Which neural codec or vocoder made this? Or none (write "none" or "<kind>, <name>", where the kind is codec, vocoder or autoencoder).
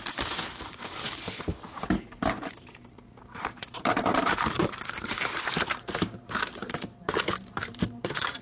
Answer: vocoder, BigVGAN v2